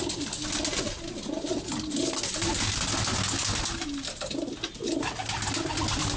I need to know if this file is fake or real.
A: real